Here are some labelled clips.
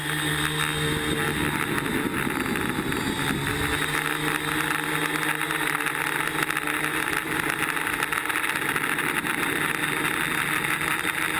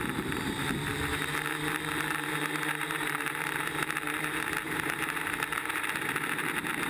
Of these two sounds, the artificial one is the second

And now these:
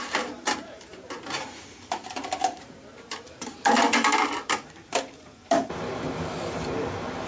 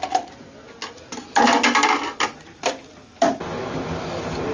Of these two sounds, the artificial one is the first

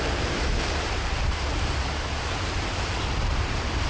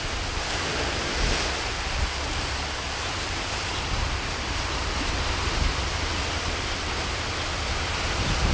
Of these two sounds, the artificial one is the first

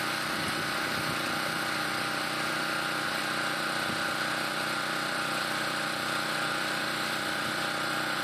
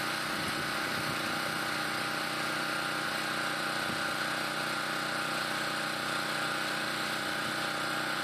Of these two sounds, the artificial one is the first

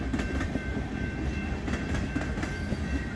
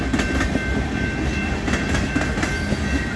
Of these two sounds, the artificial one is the first